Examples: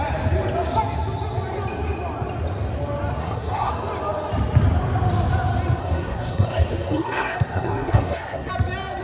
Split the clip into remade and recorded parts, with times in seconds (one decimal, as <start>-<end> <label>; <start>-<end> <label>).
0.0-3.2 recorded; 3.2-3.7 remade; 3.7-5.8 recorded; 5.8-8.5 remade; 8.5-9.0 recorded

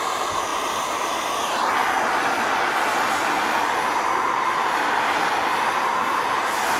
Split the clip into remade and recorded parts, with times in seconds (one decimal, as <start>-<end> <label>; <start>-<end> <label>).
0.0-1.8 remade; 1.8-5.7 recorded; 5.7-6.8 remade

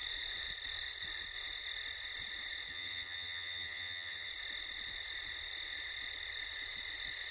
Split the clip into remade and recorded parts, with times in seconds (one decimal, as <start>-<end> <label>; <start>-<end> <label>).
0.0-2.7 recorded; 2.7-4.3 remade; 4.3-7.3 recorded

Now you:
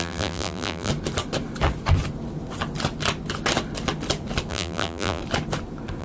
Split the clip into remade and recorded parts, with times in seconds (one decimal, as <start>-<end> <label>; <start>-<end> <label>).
0.0-0.9 remade; 0.9-4.5 recorded; 4.5-5.2 remade; 5.2-6.0 recorded